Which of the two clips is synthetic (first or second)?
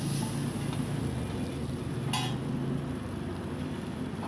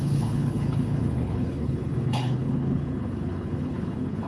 second